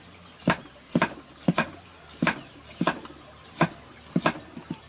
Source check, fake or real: real